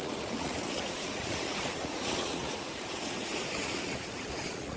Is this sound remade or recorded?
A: remade